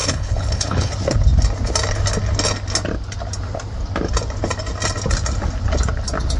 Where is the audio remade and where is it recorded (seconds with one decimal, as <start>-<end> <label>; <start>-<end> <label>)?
0.0-0.9 remade; 0.9-6.4 recorded